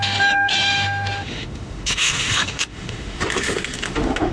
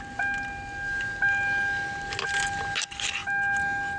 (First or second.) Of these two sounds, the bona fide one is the second